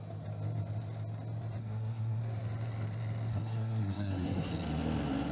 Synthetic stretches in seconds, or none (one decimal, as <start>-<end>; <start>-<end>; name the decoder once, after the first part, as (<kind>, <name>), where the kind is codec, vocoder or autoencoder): 1.6-2.2 (codec, SNAC); 3.3-4.5